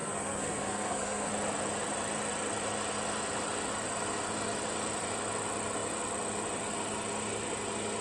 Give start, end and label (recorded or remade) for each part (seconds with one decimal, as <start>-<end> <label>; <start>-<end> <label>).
0.0-1.3 remade; 1.3-8.0 recorded